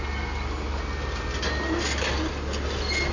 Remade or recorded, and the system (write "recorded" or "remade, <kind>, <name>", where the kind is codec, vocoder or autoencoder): recorded